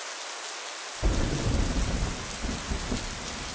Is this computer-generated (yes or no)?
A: no